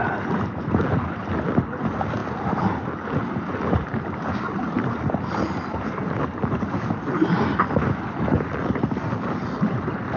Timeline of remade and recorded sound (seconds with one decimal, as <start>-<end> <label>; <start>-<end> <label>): 0.0-10.2 recorded